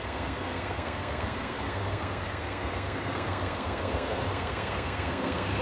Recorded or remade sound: remade